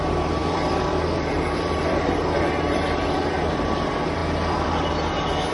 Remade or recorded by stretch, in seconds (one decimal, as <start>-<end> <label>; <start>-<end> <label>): 0.0-5.5 remade